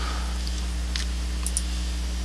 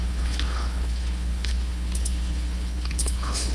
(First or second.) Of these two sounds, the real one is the first